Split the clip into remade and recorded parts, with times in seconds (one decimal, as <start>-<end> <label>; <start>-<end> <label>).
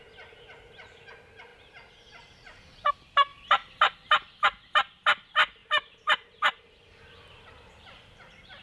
0.0-1.5 recorded; 1.5-2.9 remade; 2.9-3.3 recorded; 3.3-3.9 remade; 3.9-5.6 recorded; 5.6-6.4 remade; 6.4-8.6 recorded